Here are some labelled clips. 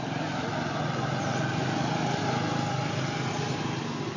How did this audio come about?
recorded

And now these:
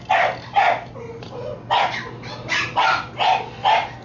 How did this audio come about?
recorded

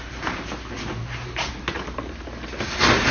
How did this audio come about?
recorded